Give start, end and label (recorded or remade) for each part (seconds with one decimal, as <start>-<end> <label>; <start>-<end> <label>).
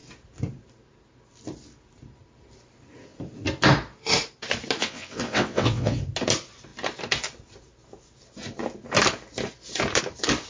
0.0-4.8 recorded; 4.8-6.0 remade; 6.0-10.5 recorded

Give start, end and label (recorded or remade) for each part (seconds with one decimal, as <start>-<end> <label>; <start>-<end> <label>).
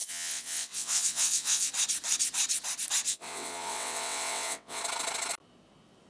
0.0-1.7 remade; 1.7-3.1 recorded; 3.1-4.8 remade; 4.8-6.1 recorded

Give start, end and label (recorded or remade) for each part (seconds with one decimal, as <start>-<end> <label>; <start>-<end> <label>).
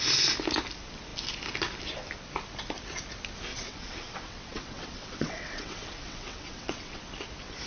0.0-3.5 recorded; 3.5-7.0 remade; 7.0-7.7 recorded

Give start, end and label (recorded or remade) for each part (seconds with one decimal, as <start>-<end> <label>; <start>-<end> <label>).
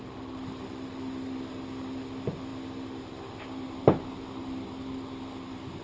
0.0-5.8 recorded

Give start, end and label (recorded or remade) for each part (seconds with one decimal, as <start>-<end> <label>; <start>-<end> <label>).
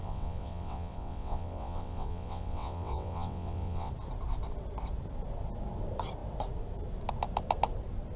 0.0-3.9 remade; 3.9-8.2 recorded